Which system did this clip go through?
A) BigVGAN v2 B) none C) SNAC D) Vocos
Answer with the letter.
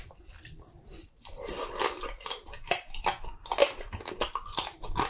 B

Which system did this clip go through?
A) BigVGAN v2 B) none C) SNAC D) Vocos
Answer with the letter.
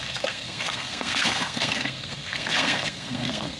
C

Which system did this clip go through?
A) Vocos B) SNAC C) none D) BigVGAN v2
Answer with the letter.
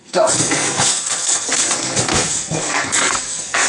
B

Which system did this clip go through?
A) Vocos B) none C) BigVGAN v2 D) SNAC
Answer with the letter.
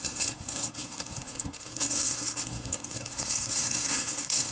D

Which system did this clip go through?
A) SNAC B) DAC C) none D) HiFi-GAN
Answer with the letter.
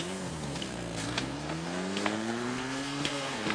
A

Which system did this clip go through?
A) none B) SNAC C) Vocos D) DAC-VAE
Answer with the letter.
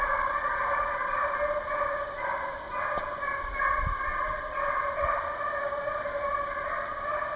A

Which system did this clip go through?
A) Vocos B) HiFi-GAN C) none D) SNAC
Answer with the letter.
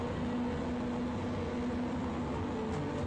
C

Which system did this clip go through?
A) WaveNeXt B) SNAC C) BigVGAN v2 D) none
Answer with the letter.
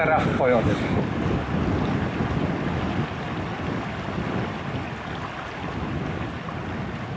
D